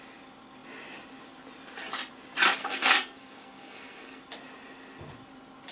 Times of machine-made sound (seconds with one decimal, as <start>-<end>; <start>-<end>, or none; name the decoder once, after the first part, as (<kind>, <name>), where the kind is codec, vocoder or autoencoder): 2.6-4.2 (codec, SNAC)